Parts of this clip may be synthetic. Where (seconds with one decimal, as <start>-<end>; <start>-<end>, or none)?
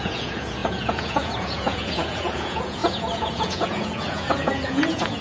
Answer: 0.0-5.2